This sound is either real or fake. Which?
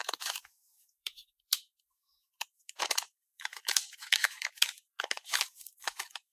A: fake